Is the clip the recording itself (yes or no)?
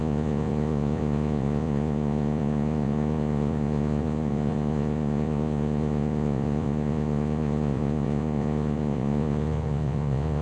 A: no